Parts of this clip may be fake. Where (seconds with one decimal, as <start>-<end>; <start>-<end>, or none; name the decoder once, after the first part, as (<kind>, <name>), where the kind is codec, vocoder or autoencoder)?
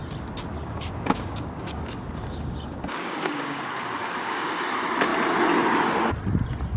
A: 0.5-4.5 (codec, DAC)